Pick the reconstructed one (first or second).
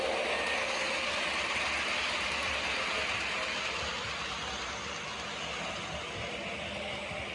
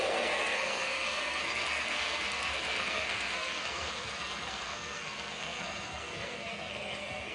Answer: second